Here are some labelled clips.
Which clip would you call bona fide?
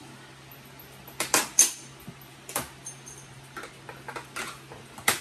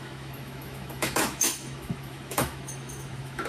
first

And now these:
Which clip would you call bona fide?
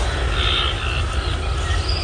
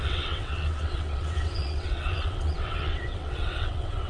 first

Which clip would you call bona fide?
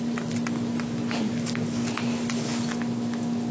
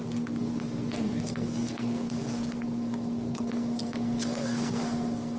first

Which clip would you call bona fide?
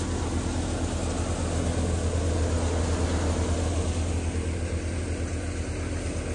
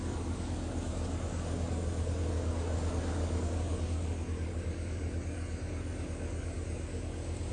first